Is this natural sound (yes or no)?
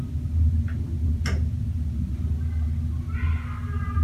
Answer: yes